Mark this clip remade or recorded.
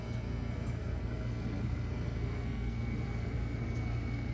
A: remade